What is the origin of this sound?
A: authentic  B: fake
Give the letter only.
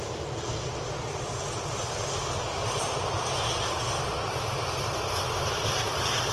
A